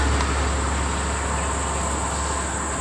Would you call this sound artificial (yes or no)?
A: no